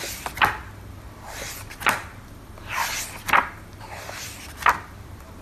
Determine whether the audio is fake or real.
real